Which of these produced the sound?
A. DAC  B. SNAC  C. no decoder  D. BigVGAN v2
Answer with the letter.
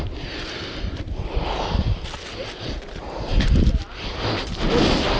C